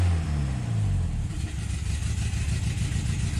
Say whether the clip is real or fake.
real